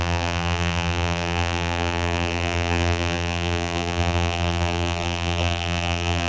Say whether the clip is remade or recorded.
remade